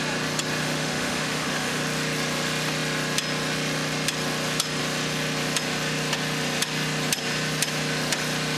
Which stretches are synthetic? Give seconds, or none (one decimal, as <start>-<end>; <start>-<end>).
0.6-1.8